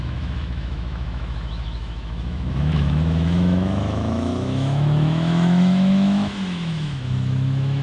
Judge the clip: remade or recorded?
remade